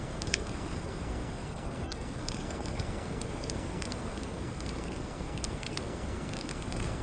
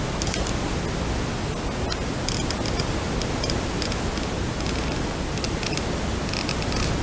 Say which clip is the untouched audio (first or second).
second